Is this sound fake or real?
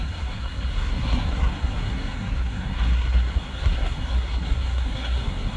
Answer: fake